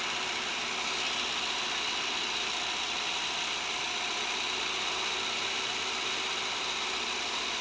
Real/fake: real